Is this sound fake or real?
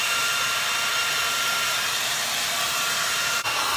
fake